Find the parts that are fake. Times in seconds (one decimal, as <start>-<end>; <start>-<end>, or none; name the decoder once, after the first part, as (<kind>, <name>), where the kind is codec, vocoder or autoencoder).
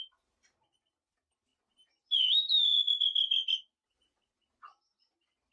none